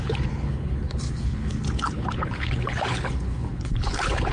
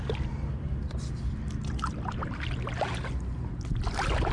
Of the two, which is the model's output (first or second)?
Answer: first